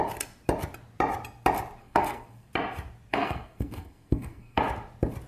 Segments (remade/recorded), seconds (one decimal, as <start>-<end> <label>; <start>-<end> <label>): 0.0-1.8 recorded; 1.8-2.5 remade; 2.5-3.1 recorded; 3.1-4.6 remade; 4.6-5.3 recorded